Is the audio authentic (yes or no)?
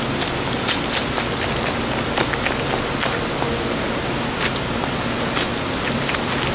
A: yes